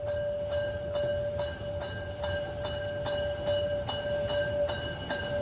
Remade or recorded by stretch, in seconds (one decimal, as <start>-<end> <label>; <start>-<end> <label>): 0.0-5.4 recorded